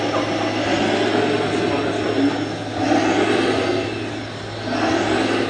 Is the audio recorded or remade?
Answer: recorded